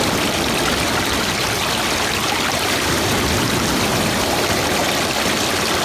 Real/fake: real